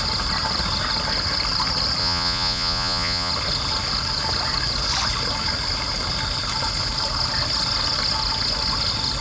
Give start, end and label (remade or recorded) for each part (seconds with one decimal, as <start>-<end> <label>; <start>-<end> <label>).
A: 0.0-2.0 recorded; 2.0-3.3 remade; 3.3-9.2 recorded